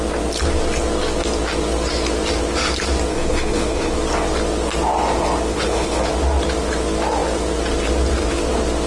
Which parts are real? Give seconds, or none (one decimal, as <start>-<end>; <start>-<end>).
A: 0.0-3.1; 3.9-5.5; 6.0-8.9